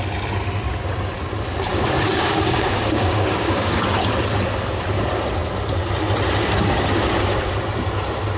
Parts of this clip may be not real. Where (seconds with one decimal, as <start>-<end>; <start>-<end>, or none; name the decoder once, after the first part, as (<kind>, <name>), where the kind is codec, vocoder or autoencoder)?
1.7-3.8 (codec, DAC)